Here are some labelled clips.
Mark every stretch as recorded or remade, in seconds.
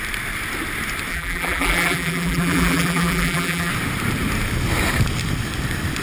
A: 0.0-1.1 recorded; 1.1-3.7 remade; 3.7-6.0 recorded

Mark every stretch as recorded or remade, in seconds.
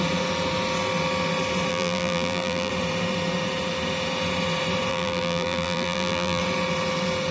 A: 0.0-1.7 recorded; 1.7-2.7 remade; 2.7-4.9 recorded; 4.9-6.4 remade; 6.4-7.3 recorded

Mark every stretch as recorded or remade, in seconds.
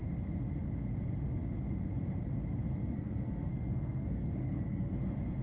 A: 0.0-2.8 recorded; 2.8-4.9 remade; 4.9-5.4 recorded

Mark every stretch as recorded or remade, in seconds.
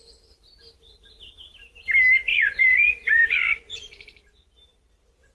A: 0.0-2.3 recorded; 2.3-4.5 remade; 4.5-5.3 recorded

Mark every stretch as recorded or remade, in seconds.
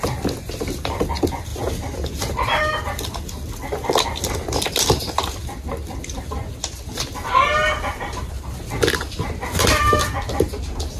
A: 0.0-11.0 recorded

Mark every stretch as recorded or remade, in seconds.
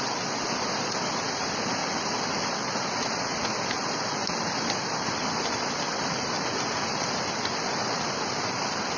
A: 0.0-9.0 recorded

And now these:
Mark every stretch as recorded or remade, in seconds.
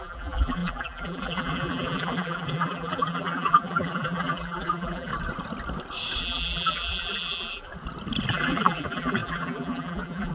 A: 0.0-5.1 remade; 5.1-6.2 recorded; 6.2-7.7 remade; 7.7-8.3 recorded; 8.3-10.3 remade